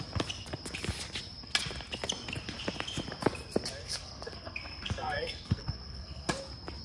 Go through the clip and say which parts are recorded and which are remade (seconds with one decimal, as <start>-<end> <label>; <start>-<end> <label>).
0.0-3.8 recorded; 3.8-6.3 remade; 6.3-6.8 recorded

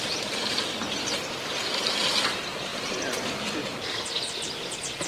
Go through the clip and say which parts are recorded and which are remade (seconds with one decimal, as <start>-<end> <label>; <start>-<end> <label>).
0.0-5.1 recorded

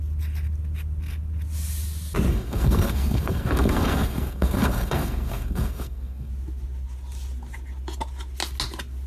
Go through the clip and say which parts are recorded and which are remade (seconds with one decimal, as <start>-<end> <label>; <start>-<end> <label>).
0.0-2.3 recorded; 2.3-6.3 remade; 6.3-9.1 recorded

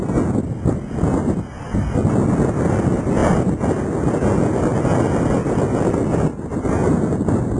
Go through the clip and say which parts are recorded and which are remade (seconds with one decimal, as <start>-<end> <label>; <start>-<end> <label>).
0.0-7.6 recorded